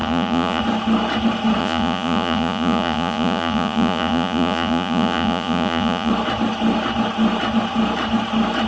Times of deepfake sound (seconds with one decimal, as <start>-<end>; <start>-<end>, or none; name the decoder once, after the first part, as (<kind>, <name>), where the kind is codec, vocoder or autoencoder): 0.0-0.6 (vocoder, Vocos); 1.6-6.1